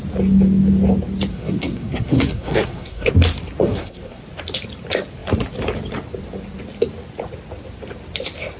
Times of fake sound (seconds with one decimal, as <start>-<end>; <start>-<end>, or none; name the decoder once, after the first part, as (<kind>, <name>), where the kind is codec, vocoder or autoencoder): 1.3-3.1 (codec, SNAC); 3.6-4.2